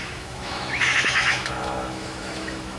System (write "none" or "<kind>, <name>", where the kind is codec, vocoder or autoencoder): autoencoder, DAC-VAE